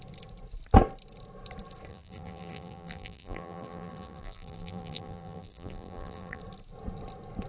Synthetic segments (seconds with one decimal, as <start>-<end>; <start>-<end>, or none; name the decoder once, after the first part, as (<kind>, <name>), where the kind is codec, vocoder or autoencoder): 1.9-6.4 (vocoder, BigVGAN v2)